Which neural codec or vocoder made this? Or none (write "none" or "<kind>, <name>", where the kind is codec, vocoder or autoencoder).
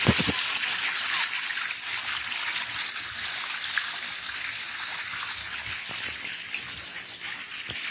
none